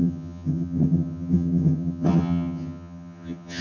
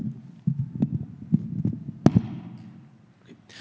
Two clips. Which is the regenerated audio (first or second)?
first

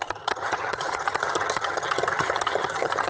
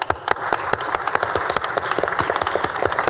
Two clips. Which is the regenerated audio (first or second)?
first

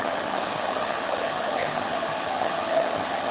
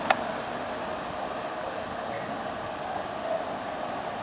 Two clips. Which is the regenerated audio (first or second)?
first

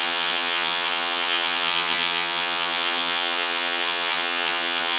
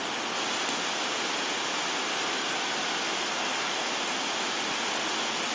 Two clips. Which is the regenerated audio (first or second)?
first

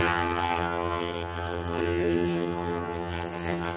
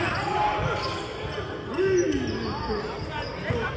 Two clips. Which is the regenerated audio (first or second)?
first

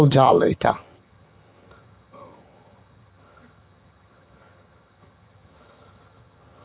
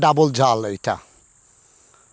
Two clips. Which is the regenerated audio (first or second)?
first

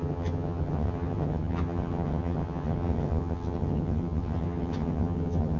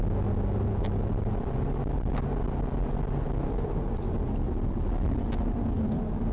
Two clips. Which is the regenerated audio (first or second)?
first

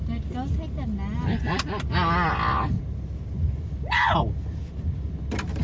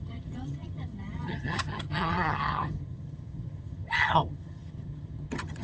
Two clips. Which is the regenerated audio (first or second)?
second